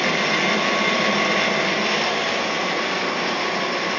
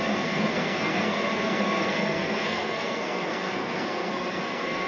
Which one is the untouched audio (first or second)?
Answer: first